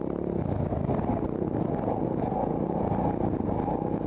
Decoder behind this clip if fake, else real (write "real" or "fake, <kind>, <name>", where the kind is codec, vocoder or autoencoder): real